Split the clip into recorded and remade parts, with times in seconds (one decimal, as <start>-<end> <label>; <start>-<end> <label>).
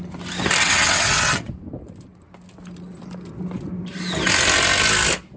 0.0-0.6 recorded; 0.6-1.5 remade; 1.5-5.4 recorded